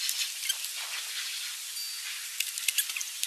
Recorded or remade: recorded